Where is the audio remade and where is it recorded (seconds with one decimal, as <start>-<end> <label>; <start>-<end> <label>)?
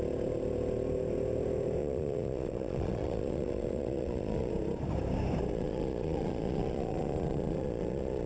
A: 0.0-1.8 recorded; 1.8-4.5 remade; 4.5-5.5 recorded; 5.5-8.3 remade